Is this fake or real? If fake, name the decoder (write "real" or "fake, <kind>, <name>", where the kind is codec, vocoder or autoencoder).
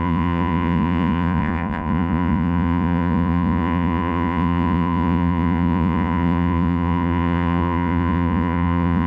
fake, vocoder, Vocos